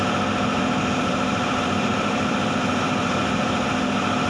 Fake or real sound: real